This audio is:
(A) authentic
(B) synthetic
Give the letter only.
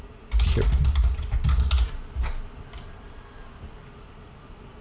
A